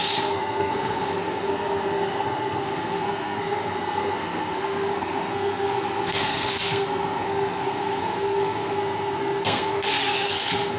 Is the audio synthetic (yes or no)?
yes